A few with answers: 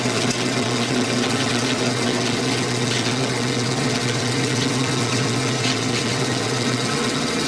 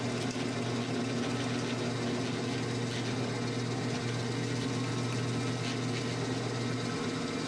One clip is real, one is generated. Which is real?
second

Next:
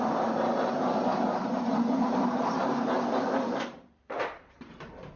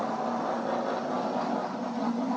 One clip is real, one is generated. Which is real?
second